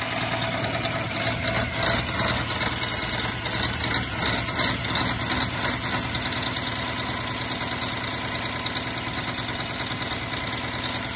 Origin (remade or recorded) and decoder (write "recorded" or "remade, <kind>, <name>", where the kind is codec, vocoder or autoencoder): recorded